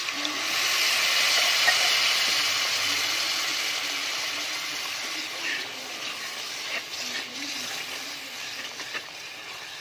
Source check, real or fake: real